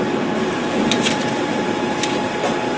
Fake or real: real